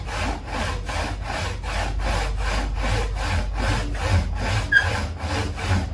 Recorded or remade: recorded